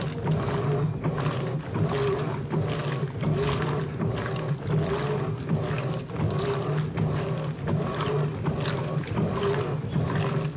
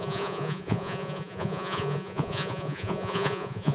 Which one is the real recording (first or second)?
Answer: first